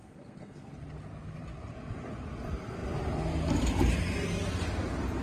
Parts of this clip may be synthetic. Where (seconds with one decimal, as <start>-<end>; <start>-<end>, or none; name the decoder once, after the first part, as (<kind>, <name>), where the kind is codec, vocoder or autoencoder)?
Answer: 0.0-0.7 (codec, SNAC)